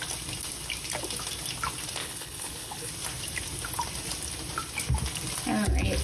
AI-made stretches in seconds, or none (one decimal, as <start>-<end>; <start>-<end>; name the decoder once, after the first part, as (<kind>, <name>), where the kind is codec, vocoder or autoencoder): 2.0-2.9 (codec, HILCodec)